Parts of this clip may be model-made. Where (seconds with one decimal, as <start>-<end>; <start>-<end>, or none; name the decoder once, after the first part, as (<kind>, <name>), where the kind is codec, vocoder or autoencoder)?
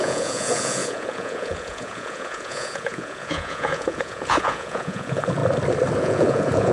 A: 0.0-5.4 (vocoder, Vocos); 6.0-6.7